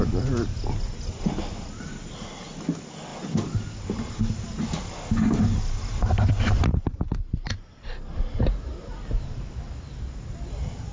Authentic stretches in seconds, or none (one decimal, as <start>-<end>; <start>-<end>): 0.0-10.9